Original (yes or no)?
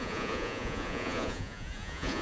no